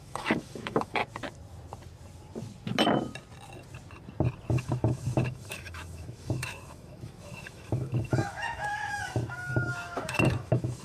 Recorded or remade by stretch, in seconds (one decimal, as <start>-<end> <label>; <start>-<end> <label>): 0.0-1.0 remade; 1.0-4.5 recorded; 4.5-10.8 remade